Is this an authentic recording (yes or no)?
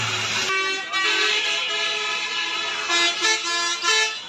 yes